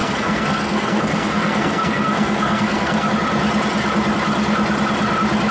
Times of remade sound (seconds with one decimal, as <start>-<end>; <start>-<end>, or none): 0.0-3.1